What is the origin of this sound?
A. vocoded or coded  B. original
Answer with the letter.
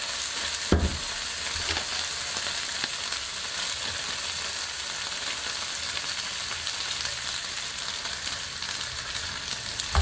B